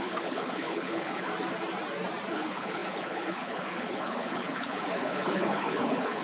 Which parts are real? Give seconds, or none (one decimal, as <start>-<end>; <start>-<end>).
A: 1.3-2.3